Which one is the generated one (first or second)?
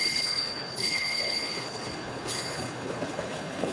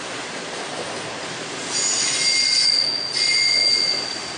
first